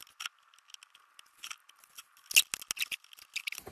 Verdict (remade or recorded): recorded